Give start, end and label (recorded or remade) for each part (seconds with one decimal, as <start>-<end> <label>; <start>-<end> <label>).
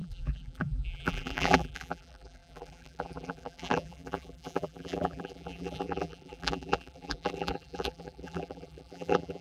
0.0-9.4 remade